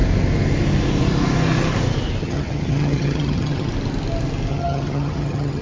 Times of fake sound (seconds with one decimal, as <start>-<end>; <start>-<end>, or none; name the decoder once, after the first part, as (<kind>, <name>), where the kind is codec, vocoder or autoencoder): 2.2-3.7 (vocoder, HiFi-GAN); 4.5-5.6